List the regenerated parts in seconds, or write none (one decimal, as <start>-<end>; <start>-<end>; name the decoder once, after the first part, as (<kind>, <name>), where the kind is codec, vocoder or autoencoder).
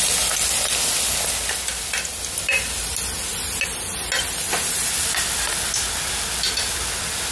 none